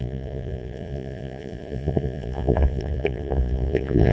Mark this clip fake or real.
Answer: fake